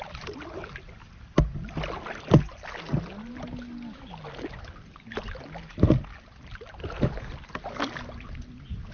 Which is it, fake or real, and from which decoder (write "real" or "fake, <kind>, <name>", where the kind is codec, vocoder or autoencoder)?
real